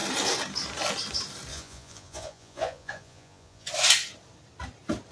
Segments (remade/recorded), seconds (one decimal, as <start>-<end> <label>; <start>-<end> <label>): 0.0-1.5 recorded; 1.5-3.7 remade; 3.7-5.1 recorded